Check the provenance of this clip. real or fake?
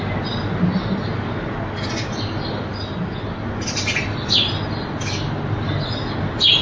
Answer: real